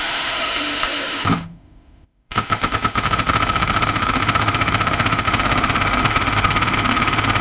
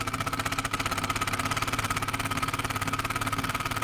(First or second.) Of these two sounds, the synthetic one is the first